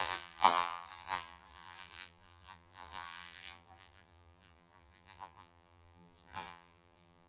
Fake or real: fake